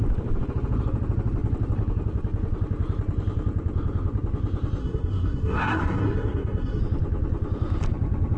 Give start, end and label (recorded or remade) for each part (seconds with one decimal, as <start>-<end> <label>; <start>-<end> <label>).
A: 0.0-4.8 recorded; 4.8-6.8 remade; 6.8-8.4 recorded